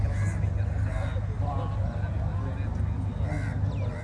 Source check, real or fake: real